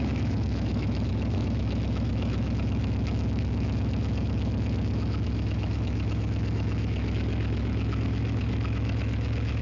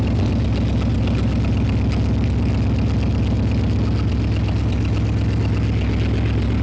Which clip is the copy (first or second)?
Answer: first